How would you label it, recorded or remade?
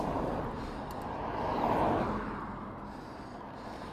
recorded